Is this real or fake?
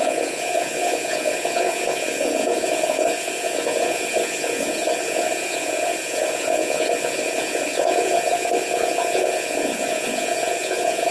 fake